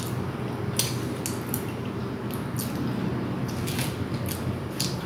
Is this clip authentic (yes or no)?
yes